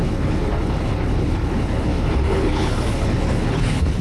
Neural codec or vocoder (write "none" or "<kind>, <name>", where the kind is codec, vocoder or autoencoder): codec, HILCodec